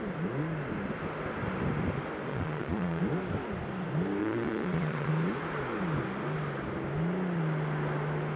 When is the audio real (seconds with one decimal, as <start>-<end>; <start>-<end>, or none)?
0.0-2.3; 3.0-4.2; 5.1-8.4